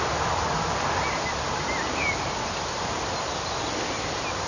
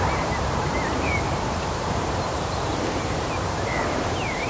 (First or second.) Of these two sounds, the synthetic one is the second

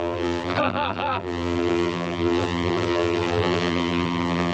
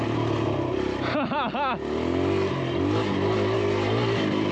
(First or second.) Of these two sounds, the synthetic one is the first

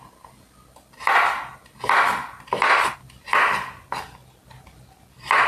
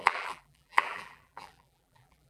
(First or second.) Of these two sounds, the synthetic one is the second